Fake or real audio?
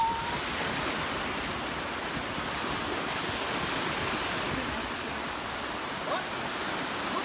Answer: real